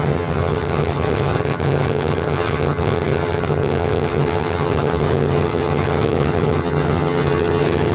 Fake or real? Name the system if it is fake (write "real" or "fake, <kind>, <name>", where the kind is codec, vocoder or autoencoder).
fake, vocoder, HiFi-GAN